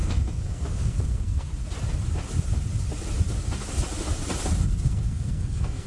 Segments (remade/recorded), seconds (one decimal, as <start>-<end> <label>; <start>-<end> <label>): 0.0-1.5 remade; 1.5-4.6 recorded; 4.6-5.9 remade